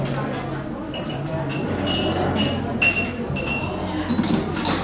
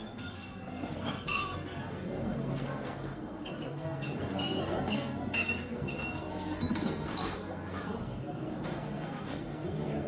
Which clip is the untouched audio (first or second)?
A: first